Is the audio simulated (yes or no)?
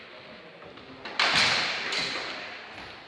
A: no